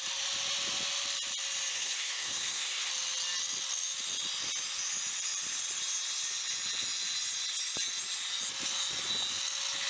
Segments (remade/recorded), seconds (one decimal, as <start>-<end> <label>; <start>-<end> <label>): 0.0-1.7 recorded; 1.7-2.9 remade; 2.9-9.9 recorded